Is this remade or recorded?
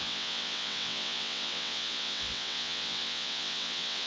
remade